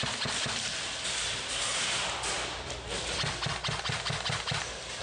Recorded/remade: recorded